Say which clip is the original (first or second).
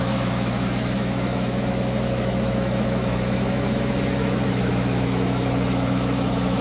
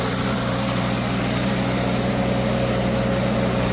second